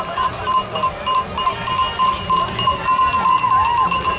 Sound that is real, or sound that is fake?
real